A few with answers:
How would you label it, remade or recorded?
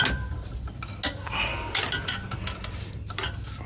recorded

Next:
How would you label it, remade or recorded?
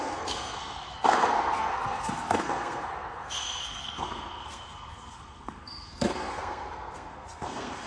remade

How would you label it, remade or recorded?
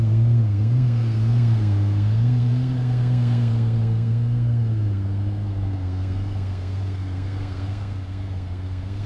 remade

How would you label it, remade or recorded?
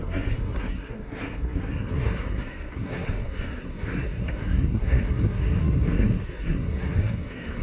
remade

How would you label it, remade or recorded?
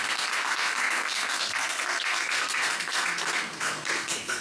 remade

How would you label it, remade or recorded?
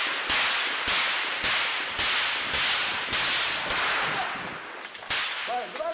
recorded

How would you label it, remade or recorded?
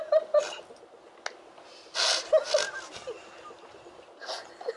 recorded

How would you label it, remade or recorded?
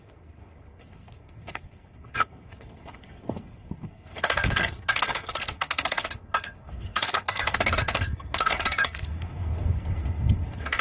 remade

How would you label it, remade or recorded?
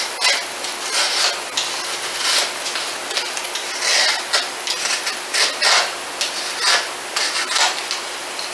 recorded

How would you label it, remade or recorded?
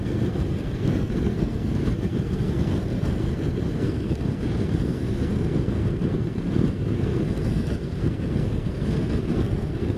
remade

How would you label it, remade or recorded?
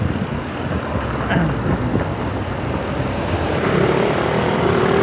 recorded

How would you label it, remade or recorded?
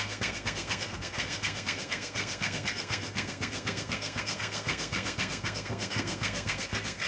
remade